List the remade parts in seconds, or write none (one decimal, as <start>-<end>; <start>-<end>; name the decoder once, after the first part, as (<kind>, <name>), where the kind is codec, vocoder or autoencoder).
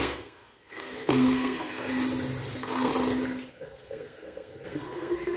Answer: 0.0-1.9 (codec, SNAC); 2.5-2.9; 3.5-5.4